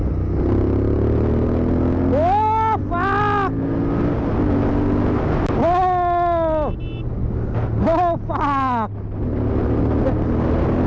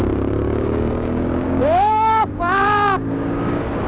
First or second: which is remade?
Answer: second